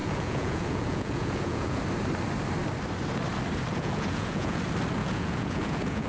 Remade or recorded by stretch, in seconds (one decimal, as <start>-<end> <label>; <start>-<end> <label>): 0.0-1.8 remade; 1.8-3.7 recorded; 3.7-4.6 remade; 4.6-5.0 recorded; 5.0-6.1 remade

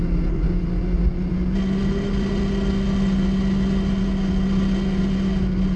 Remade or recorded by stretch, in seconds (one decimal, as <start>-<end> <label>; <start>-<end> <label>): 0.0-5.8 recorded